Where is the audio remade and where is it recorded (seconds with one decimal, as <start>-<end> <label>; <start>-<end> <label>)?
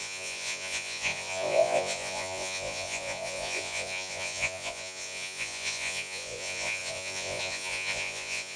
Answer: 0.0-8.6 remade